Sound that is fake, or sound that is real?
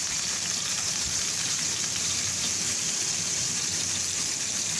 fake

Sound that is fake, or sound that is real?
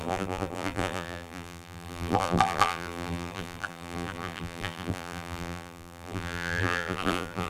fake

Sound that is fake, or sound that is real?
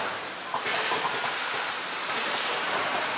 fake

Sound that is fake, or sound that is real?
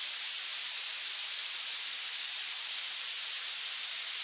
fake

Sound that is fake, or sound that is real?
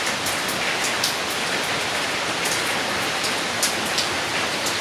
fake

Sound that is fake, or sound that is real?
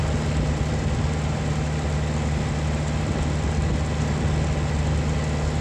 real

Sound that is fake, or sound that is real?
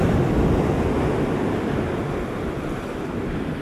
real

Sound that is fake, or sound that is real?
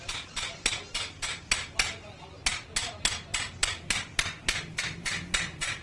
real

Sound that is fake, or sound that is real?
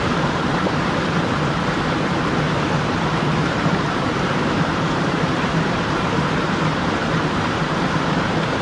fake